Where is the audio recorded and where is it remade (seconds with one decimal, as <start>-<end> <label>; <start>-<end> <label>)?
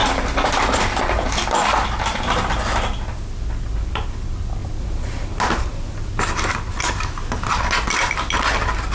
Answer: 0.0-8.9 recorded